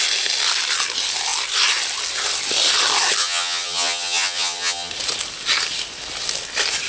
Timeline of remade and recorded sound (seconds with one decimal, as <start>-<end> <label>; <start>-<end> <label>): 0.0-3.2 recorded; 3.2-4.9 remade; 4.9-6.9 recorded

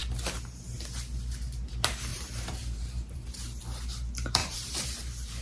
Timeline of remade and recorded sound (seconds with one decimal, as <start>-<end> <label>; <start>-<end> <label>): 0.0-2.1 recorded; 2.1-3.6 remade; 3.6-4.4 recorded; 4.4-5.4 remade

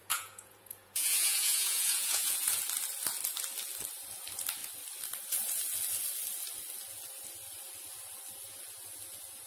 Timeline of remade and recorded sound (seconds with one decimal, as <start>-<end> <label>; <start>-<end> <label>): 0.0-2.6 remade; 2.6-9.5 recorded

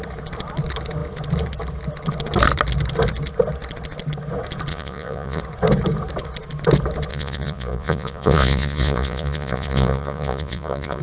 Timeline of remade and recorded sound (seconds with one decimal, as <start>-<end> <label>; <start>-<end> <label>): 0.0-4.7 recorded; 4.7-5.4 remade; 5.4-7.1 recorded; 7.1-11.0 remade